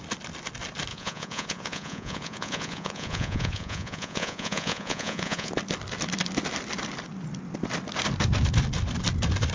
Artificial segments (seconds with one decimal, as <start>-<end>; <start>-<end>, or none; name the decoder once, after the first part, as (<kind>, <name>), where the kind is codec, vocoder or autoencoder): 0.9-5.5 (vocoder, Vocos)